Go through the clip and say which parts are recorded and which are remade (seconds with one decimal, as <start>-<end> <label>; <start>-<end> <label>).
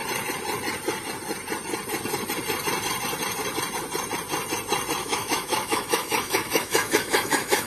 0.0-5.0 recorded; 5.0-7.7 remade